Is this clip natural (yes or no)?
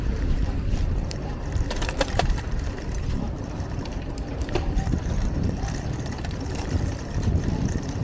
no